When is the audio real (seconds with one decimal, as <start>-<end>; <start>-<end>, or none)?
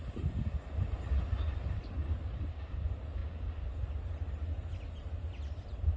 0.0-6.0